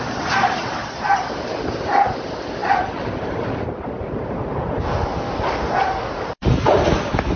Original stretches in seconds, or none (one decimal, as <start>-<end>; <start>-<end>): 0.0-0.8; 2.2-2.6; 7.0-7.4